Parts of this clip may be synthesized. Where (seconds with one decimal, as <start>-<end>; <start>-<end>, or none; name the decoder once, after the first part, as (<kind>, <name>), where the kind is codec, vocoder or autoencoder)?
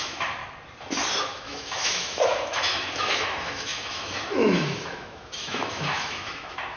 0.0-0.4 (autoencoder, DAC-VAE); 1.2-6.8